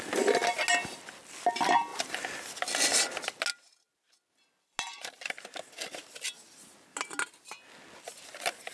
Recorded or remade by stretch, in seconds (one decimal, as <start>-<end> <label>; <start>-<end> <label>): 0.0-8.7 recorded